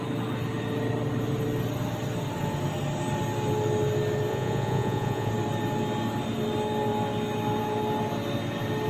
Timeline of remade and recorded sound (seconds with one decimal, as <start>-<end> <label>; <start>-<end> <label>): 0.0-4.3 recorded; 4.3-5.3 remade; 5.3-8.9 recorded

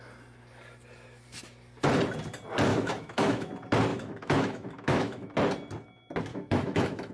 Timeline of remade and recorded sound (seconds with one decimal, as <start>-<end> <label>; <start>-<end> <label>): 0.0-2.7 recorded; 2.7-3.5 remade; 3.5-3.9 recorded; 3.9-5.3 remade; 5.3-6.3 recorded; 6.3-7.1 remade

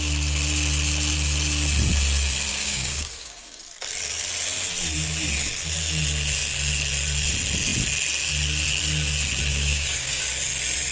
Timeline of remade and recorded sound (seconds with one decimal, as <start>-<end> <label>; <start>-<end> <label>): 0.0-2.5 recorded; 2.5-3.6 remade; 3.6-9.5 recorded; 9.5-10.3 remade; 10.3-10.9 recorded

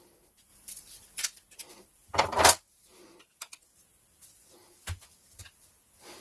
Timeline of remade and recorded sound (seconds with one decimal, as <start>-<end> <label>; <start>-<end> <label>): 0.0-3.1 remade; 3.1-5.4 recorded; 5.4-6.2 remade

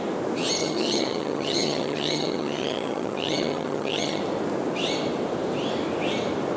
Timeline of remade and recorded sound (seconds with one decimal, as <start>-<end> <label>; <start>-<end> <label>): 0.0-0.6 recorded; 0.6-4.2 remade; 4.2-6.6 recorded

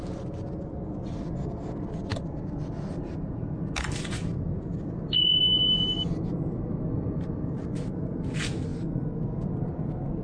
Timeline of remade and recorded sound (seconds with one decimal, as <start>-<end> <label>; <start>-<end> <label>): 0.0-10.2 recorded

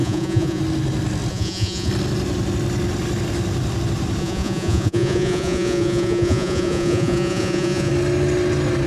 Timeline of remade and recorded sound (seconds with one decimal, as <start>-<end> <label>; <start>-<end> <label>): 0.0-0.6 remade; 0.6-1.3 recorded; 1.3-1.9 remade; 1.9-4.2 recorded; 4.2-7.9 remade; 7.9-8.9 recorded